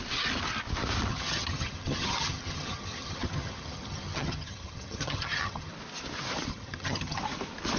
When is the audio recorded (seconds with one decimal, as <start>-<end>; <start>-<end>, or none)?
0.0-1.1; 5.7-6.5; 7.2-7.8